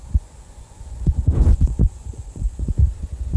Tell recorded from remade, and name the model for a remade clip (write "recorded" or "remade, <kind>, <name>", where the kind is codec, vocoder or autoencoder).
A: remade, vocoder, Vocos